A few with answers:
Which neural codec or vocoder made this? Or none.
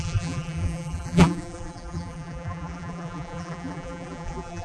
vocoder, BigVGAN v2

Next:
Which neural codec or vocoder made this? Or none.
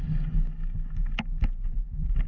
none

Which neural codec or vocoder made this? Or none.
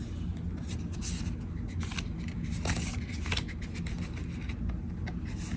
none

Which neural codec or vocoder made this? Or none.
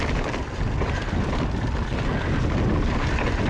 none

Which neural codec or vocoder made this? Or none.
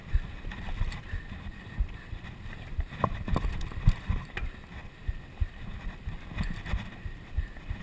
none